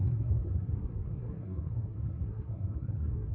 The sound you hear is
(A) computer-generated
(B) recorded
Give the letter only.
A